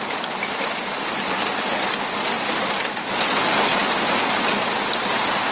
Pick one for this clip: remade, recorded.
recorded